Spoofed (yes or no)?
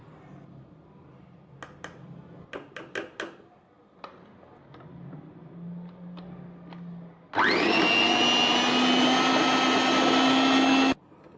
no